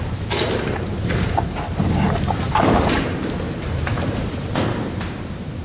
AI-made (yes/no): yes